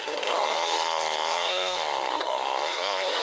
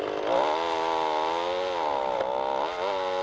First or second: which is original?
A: second